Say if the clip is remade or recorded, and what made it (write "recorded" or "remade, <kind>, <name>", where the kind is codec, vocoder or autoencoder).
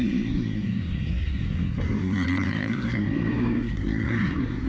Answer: remade, codec, SNAC